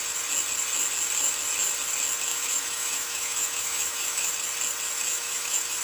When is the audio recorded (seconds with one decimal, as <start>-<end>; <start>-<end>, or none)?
0.0-2.3; 4.3-5.1